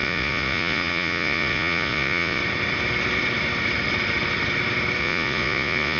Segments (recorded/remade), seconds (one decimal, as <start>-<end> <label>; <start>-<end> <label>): 0.0-2.4 remade; 2.4-5.0 recorded; 5.0-6.0 remade